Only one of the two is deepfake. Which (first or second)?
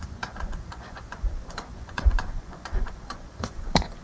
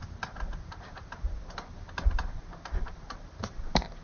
first